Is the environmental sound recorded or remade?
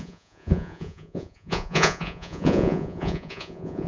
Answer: remade